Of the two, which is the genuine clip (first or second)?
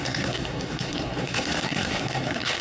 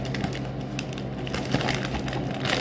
second